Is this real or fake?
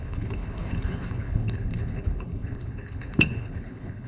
fake